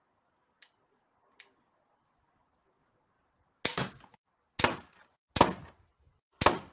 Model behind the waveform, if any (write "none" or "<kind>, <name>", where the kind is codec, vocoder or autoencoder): none